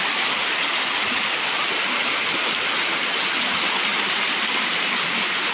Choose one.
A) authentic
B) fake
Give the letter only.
A